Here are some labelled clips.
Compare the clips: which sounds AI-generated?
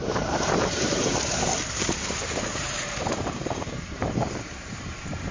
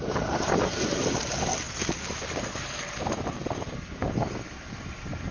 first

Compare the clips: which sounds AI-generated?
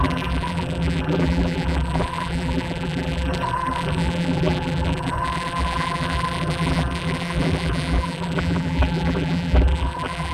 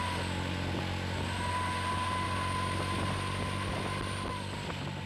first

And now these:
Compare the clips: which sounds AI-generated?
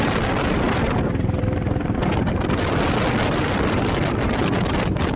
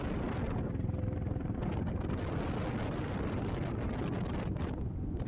first